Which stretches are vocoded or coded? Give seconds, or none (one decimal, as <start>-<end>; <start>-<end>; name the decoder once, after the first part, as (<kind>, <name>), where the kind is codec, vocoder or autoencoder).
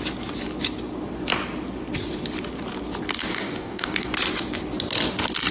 3.3-4.1 (codec, DAC)